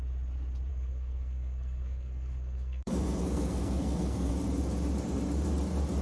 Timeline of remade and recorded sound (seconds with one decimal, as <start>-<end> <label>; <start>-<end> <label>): 0.0-0.7 recorded; 0.7-4.3 remade; 4.3-6.0 recorded